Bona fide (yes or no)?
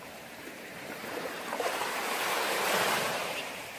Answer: no